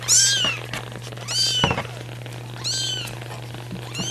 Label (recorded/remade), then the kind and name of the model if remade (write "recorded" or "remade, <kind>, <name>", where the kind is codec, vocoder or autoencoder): recorded